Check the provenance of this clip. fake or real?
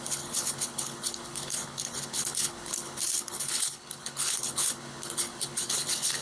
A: fake